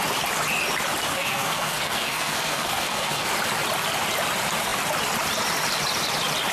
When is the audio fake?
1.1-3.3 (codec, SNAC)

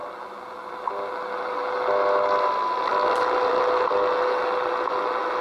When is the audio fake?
2.9-3.6 (vocoder, BigVGAN v2)

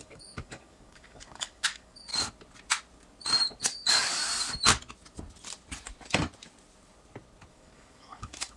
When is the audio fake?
0.0-2.1 (codec, DAC); 3.6-4.2; 7.5-8.6

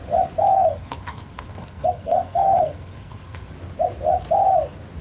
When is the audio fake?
0.5-3.5 (codec, SNAC)

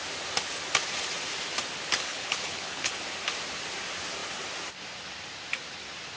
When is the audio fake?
2.1-3.0 (codec, HILCodec)